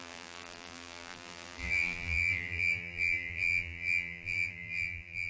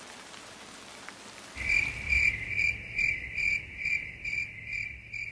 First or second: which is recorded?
second